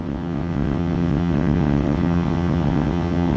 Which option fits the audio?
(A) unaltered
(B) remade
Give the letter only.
B